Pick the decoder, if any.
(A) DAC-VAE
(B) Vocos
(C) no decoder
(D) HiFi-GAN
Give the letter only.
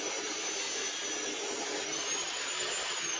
C